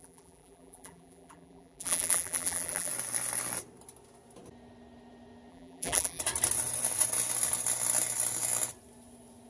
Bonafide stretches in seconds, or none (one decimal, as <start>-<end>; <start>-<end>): 2.9-5.5; 6.2-9.5